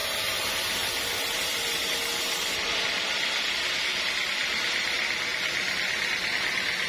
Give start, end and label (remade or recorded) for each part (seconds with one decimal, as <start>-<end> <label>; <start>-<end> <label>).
0.0-6.9 recorded